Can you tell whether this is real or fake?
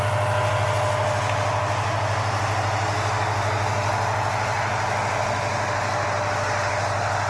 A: real